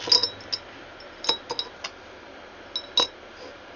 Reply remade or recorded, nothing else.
recorded